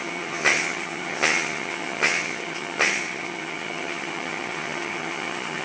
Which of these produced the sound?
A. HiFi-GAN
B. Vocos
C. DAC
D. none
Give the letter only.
A